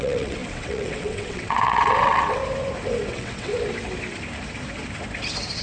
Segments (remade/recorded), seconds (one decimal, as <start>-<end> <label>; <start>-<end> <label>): 0.0-2.4 remade; 2.4-3.1 recorded; 3.1-3.5 remade; 3.5-5.6 recorded